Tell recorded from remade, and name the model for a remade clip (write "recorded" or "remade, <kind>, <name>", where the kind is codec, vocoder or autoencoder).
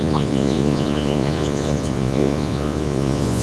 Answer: remade, vocoder, Vocos